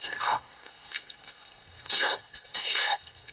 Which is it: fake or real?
fake